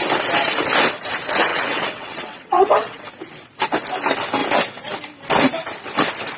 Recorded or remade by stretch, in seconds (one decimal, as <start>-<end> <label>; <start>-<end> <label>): 0.0-1.5 recorded; 1.5-3.1 remade; 3.1-6.4 recorded